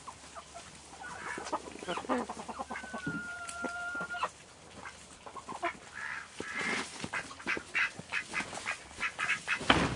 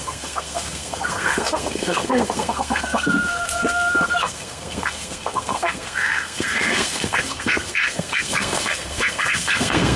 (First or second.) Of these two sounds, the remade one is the second